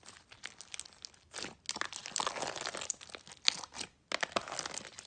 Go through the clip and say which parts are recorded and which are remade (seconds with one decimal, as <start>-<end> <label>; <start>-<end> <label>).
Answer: 0.0-5.1 recorded

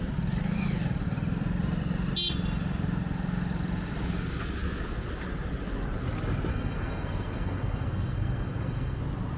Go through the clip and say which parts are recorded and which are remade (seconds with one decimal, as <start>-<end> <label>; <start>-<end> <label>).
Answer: 0.0-6.5 recorded; 6.5-9.0 remade; 9.0-9.4 recorded

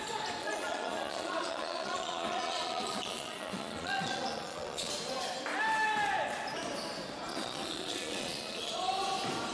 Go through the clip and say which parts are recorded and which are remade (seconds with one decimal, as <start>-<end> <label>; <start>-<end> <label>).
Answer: 0.0-0.4 recorded; 0.4-4.9 remade; 4.9-7.3 recorded; 7.3-8.7 remade; 8.7-9.5 recorded

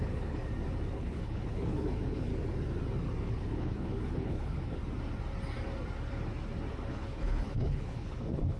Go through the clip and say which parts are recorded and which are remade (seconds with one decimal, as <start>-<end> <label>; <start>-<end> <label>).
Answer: 0.0-0.4 remade; 0.4-0.9 recorded; 0.9-2.3 remade; 2.3-3.2 recorded; 3.2-4.8 remade; 4.8-6.7 recorded; 6.7-8.6 remade